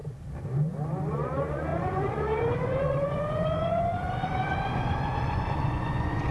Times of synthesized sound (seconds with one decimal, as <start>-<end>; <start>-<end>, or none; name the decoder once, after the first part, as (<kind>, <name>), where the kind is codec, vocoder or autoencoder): 1.1-6.3 (vocoder, Vocos)